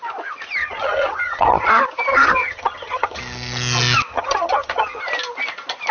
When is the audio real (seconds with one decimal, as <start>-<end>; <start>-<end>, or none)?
0.0-0.6; 1.7-2.1; 3.2-4.1; 5.0-5.9